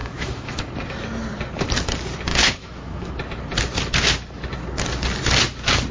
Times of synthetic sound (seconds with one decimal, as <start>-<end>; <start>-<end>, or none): 0.0-0.7; 2.3-3.1